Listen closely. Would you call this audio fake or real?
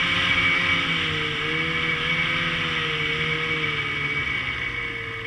real